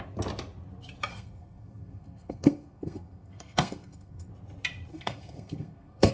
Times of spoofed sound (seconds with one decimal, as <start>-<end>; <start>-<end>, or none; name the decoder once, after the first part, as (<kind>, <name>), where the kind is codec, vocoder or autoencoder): 1.1-4.3 (codec, SNAC); 4.9-6.1